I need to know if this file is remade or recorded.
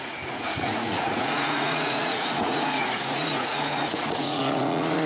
remade